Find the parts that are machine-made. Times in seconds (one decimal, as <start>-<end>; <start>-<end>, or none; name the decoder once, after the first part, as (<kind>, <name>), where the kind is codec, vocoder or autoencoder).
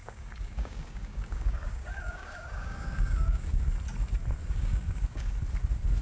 0.0-3.6 (codec, DAC); 4.4-5.3